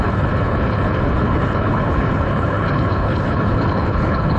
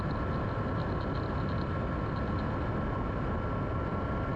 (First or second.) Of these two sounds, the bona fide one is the second